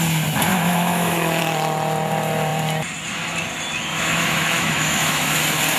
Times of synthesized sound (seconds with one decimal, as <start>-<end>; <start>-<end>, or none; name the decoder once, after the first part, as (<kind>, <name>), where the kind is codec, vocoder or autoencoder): 0.5-1.4 (autoencoder, DAC-VAE); 3.9-5.3

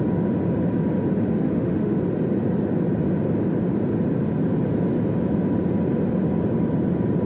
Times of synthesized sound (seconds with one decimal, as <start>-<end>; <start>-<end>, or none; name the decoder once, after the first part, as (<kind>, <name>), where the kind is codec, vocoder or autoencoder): 1.4-2.0 (autoencoder, DAC-VAE)

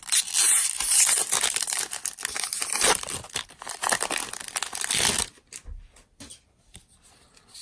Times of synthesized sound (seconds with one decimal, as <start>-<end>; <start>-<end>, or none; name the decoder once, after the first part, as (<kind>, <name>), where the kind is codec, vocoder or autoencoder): none